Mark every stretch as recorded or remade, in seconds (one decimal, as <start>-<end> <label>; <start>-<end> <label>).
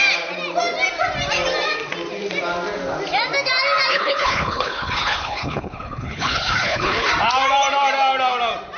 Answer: 0.0-3.9 recorded; 3.9-7.1 remade; 7.1-8.8 recorded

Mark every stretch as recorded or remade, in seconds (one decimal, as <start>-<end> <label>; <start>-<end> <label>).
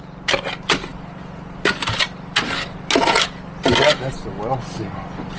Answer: 0.0-5.4 recorded